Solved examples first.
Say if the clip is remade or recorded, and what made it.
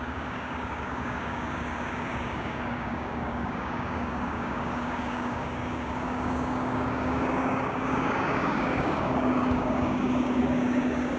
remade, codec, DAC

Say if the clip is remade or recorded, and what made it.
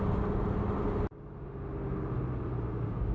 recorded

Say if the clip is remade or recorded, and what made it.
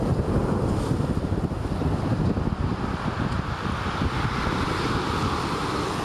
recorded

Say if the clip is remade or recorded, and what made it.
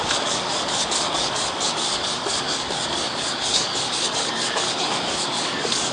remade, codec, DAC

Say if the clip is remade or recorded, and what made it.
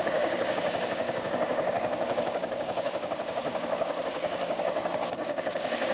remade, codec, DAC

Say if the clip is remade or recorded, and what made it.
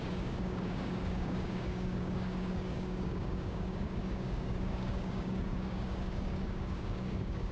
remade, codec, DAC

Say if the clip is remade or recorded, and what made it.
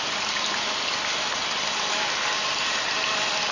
recorded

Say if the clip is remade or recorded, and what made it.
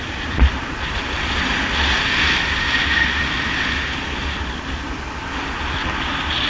recorded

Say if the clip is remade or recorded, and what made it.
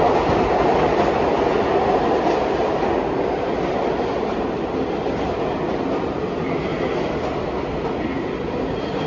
recorded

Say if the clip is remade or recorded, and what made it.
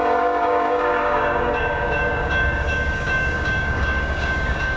remade, codec, DAC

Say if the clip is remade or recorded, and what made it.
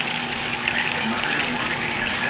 remade, codec, DAC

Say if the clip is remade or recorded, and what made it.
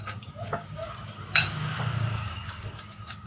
remade, codec, DAC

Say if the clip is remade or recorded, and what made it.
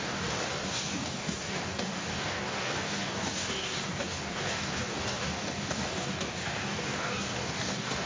remade, codec, DAC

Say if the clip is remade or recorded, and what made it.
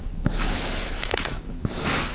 remade, codec, DAC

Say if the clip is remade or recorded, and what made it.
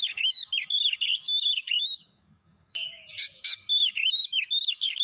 remade, codec, DAC